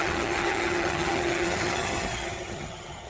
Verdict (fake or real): fake